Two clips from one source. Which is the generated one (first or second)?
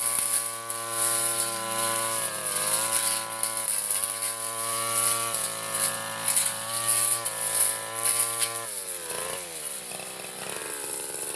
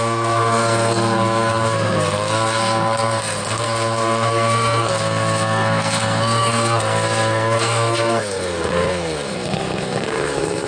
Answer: second